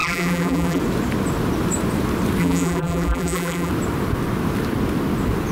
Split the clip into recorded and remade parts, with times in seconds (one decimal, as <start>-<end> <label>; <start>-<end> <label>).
0.0-0.8 remade; 0.8-2.4 recorded; 2.4-3.7 remade; 3.7-5.5 recorded